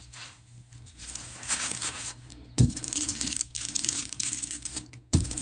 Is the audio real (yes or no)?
no